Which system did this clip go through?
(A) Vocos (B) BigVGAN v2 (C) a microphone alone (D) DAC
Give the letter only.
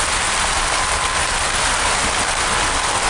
C